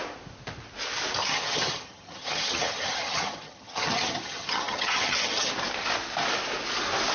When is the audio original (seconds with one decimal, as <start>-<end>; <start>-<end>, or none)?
0.0-1.2; 5.5-7.1